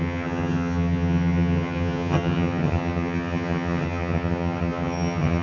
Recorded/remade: remade